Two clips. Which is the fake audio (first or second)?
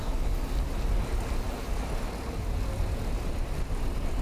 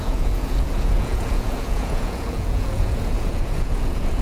second